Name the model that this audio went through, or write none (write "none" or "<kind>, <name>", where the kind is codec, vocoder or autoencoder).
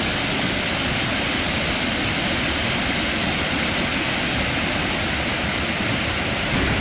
none